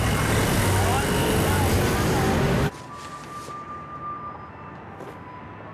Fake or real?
real